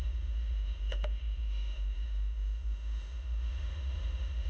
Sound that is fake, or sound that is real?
fake